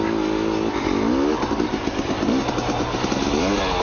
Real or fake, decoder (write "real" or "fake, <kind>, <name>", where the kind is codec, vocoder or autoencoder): real